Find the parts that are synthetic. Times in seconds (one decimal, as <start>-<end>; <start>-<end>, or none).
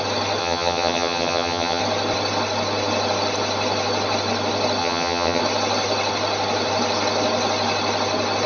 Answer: 0.4-1.8; 4.8-5.4